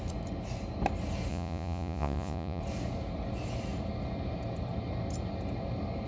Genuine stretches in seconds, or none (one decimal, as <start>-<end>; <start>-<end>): 0.0-1.3; 2.6-6.1